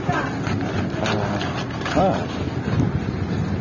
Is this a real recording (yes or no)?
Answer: yes